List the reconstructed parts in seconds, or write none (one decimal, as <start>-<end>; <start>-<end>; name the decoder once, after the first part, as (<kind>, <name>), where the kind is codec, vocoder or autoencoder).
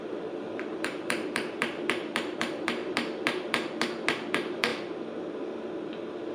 0.0-2.8 (vocoder, BigVGAN v2); 4.3-4.7